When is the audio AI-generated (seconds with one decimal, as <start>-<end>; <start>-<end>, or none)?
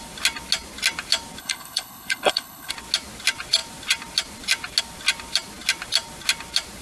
1.4-2.7